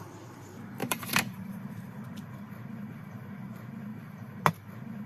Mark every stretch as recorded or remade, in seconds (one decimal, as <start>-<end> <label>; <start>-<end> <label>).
0.0-0.8 recorded; 0.8-1.9 remade; 1.9-3.9 recorded; 3.9-4.4 remade; 4.4-5.1 recorded